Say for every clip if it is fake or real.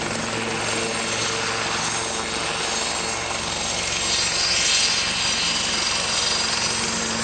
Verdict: real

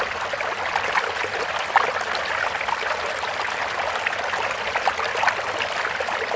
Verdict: real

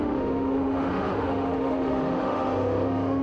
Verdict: fake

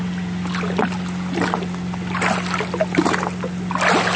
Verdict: real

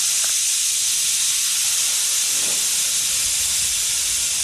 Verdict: real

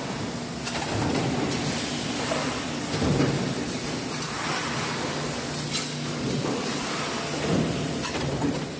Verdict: real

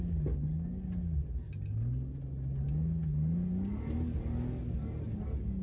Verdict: real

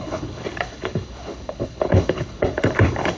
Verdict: fake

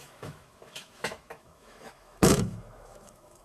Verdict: fake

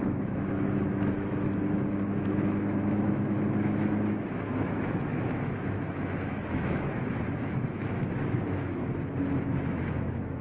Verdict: fake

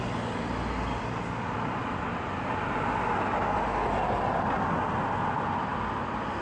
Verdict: real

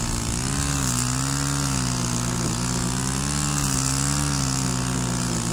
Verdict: real